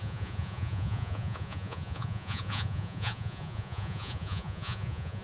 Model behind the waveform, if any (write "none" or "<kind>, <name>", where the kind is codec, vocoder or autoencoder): vocoder, Vocos